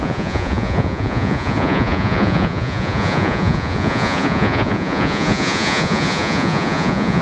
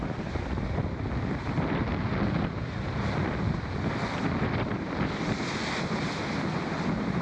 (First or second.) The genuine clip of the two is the second